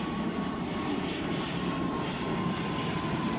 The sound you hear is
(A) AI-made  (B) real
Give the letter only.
A